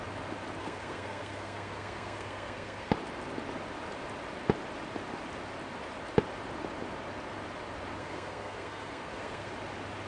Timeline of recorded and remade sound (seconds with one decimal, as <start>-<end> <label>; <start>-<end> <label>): 0.0-0.6 recorded; 0.6-2.9 remade; 2.9-8.0 recorded; 8.0-9.5 remade; 9.5-10.1 recorded